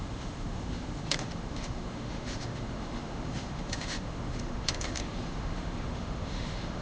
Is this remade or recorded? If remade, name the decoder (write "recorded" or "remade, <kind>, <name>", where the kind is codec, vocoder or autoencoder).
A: remade, autoencoder, DAC-VAE